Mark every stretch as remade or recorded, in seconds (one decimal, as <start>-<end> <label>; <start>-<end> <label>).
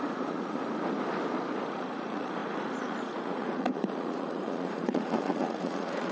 0.0-0.6 remade; 0.6-1.7 recorded; 1.7-6.1 remade